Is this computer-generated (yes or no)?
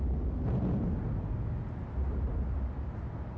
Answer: no